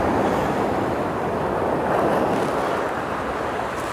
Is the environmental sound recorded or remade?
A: recorded